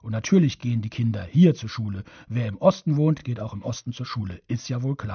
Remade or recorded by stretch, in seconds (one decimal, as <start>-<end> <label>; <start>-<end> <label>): 0.0-3.2 recorded; 3.2-4.2 remade; 4.2-5.1 recorded